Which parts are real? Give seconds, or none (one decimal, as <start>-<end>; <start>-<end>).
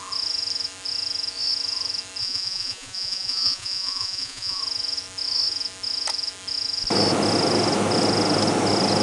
0.0-2.2; 4.6-9.0